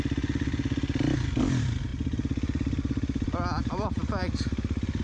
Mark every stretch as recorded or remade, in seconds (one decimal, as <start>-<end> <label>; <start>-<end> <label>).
0.0-5.0 recorded